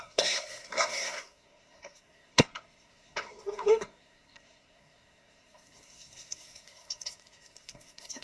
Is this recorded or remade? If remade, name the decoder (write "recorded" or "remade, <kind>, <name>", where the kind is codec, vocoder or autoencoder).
remade, codec, SNAC